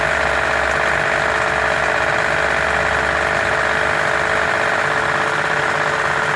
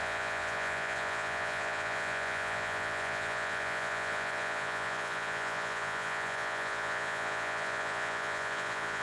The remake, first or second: second